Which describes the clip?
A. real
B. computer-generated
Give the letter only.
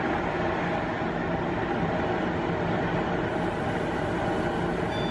A